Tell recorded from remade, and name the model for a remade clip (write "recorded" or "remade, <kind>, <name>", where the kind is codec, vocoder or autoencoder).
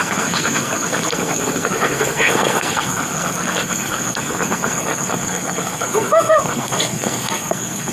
remade, codec, SNAC